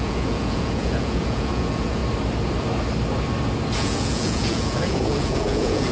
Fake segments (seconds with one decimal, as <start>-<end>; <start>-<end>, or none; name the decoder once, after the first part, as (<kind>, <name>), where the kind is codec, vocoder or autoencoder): 0.0-2.0 (vocoder, Vocos); 3.7-5.9

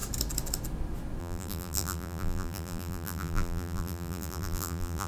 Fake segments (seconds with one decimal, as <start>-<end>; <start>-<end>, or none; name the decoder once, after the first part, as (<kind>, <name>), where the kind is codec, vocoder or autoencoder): 1.2-5.1 (vocoder, BigVGAN v2)

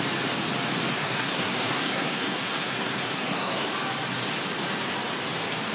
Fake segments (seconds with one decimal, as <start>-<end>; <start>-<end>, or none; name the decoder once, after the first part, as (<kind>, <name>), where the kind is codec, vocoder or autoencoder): 0.9-3.7 (codec, SNAC)

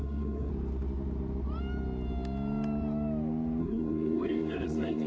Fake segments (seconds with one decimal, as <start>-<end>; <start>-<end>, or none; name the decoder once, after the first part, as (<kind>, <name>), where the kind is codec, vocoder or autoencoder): 0.0-0.5 (codec, SNAC); 3.6-5.1

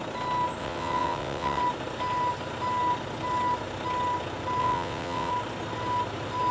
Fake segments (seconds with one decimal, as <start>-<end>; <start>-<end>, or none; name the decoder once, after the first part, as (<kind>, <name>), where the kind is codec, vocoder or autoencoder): 0.6-1.6 (vocoder, WaveNeXt); 4.6-5.3

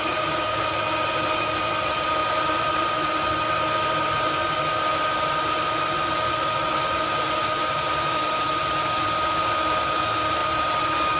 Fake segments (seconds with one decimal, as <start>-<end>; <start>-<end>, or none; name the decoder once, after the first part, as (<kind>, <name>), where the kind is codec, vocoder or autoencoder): 7.6-9.4 (vocoder, BigVGAN v2); 10.4-11.2

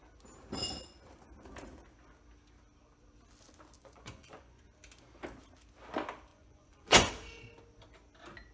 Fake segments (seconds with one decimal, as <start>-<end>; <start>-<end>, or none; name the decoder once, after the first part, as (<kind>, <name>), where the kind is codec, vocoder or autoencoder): 3.8-4.6 (vocoder, Vocos); 6.3-7.1